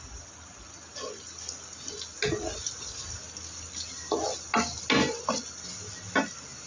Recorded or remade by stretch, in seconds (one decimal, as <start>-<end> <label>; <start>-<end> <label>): 0.0-6.7 recorded